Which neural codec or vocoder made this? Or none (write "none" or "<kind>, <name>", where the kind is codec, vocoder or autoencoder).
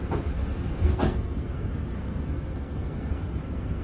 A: codec, SNAC